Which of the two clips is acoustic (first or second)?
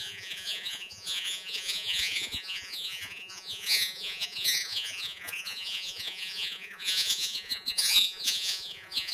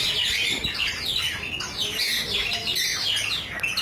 second